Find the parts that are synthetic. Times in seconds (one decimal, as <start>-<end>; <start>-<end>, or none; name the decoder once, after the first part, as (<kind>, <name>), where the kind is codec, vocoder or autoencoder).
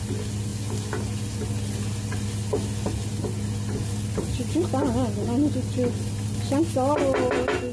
none